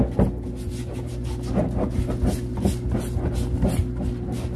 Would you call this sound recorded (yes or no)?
yes